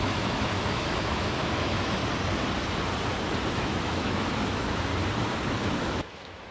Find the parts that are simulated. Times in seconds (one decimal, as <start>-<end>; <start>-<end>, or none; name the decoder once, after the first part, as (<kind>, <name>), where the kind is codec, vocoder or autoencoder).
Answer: 0.0-2.0 (autoencoder, DAC-VAE); 3.5-4.9; 5.6-6.5